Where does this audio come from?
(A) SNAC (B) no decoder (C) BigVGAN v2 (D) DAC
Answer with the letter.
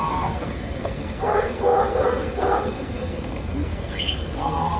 A